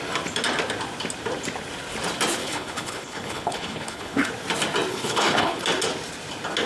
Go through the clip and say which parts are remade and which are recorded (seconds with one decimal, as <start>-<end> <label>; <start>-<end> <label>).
0.0-2.4 recorded; 2.4-4.3 remade; 4.3-4.9 recorded; 4.9-5.6 remade; 5.6-6.7 recorded